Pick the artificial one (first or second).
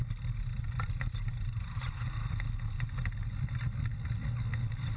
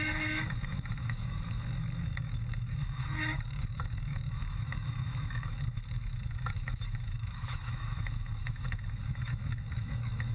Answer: second